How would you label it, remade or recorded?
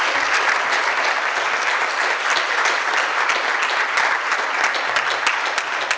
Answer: recorded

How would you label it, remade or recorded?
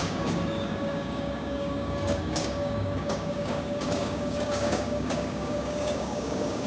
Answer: remade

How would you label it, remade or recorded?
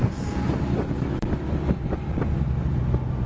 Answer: recorded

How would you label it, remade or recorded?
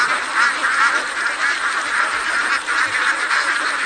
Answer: recorded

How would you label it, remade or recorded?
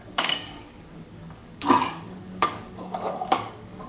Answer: remade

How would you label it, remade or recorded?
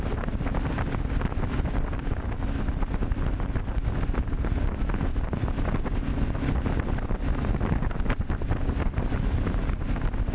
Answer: recorded